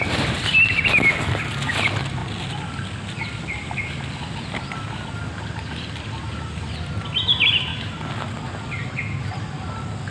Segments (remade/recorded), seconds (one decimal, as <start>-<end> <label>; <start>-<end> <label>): 0.0-10.1 recorded